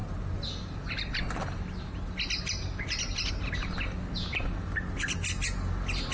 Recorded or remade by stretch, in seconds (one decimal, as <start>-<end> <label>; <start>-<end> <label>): 0.0-6.1 recorded